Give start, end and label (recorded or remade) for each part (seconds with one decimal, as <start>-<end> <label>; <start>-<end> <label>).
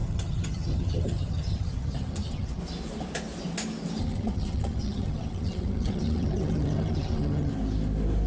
0.0-2.6 remade; 2.6-4.0 recorded; 4.0-7.5 remade; 7.5-8.3 recorded